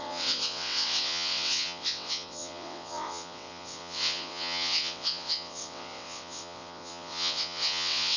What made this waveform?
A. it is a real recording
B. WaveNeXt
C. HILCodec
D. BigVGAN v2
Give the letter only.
B